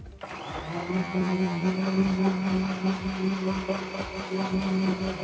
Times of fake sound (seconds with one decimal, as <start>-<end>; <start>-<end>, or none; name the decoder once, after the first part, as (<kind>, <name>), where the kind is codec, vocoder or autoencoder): 1.0-1.7 (vocoder, HiFi-GAN)

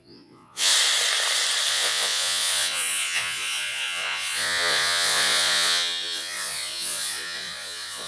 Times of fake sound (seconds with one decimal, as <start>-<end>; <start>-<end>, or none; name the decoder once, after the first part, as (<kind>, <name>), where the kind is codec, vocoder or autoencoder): 0.0-0.7 (vocoder, Vocos); 1.7-8.1

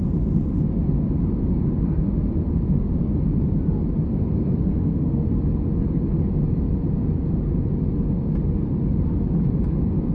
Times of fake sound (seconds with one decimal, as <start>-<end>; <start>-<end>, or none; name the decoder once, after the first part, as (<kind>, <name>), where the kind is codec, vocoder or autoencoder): 4.1-5.3 (codec, SNAC)